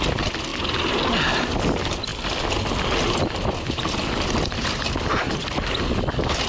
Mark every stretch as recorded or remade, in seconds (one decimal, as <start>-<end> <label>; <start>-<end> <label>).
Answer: 0.0-6.5 recorded